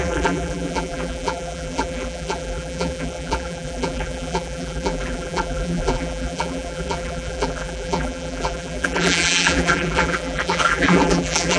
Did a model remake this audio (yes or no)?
yes